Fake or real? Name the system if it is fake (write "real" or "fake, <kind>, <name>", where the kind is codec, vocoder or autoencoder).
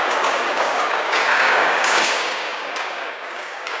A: fake, codec, DAC